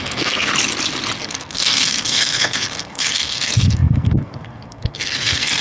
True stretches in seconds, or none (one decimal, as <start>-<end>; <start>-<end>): 0.5-1.2